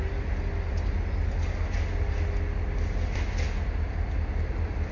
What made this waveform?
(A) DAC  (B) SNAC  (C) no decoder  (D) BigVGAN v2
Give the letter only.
C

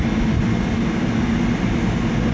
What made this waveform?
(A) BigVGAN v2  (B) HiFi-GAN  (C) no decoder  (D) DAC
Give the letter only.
C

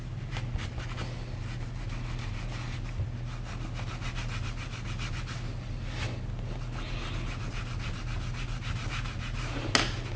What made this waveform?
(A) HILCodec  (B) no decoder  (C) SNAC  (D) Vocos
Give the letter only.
B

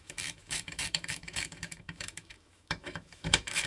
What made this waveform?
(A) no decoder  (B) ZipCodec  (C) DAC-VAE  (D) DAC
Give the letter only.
C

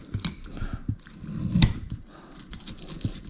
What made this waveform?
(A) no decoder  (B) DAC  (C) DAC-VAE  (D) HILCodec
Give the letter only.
A